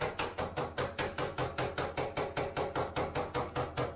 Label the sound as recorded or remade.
recorded